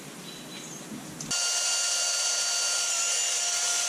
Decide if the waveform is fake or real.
real